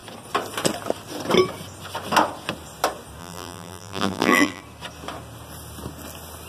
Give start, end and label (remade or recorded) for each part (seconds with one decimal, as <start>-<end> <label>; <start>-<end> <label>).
0.0-3.2 recorded; 3.2-4.6 remade; 4.6-6.5 recorded